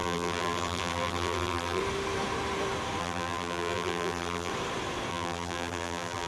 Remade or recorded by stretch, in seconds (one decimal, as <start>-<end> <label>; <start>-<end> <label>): 0.0-1.8 remade; 1.8-3.0 recorded; 3.0-4.5 remade; 4.5-5.1 recorded; 5.1-6.3 remade